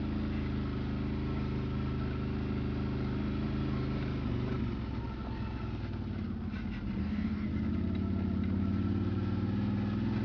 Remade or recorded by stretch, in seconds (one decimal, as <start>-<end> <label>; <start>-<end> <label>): 0.0-7.0 recorded; 7.0-7.5 remade; 7.5-10.2 recorded